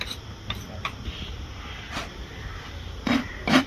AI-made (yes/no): yes